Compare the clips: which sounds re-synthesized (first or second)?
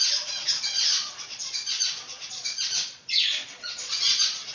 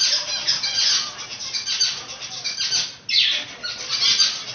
first